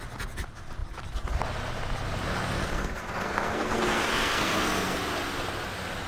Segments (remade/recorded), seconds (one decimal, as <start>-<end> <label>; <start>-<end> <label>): 0.0-2.6 recorded; 2.6-5.0 remade; 5.0-6.1 recorded